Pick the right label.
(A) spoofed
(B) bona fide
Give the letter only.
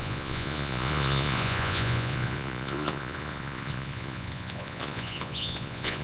A